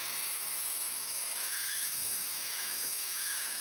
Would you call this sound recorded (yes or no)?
no